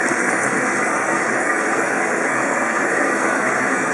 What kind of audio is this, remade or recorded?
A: remade